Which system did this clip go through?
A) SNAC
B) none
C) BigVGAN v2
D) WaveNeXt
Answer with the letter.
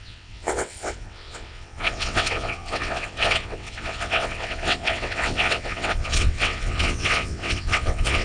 D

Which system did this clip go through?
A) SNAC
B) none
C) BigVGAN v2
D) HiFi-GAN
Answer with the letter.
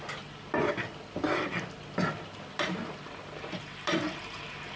B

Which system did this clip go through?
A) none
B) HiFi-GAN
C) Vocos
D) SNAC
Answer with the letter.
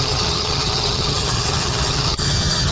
B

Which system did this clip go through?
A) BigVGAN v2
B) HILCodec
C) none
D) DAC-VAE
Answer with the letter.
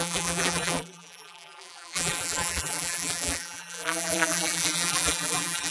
A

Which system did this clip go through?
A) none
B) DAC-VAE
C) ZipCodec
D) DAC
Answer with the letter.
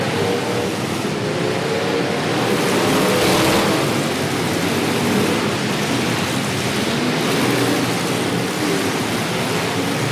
A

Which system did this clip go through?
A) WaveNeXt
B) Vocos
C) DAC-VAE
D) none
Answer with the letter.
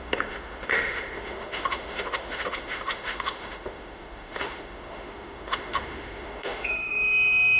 C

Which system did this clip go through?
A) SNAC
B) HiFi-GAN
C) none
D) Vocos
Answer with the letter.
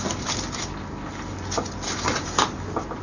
C